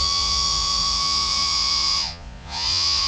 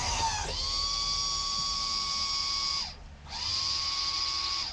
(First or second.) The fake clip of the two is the first